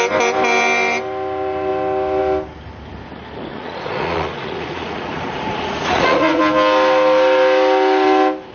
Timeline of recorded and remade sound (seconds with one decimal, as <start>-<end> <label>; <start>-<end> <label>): 0.0-3.5 recorded; 3.5-6.4 remade; 6.4-8.5 recorded